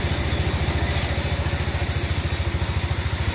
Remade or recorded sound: recorded